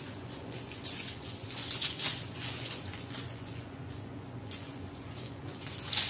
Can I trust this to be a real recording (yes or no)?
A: no